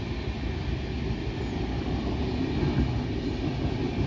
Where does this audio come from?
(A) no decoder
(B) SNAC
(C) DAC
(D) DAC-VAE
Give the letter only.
A